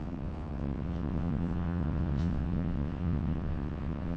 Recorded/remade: remade